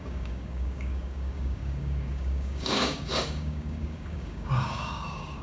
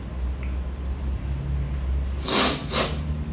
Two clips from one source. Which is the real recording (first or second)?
second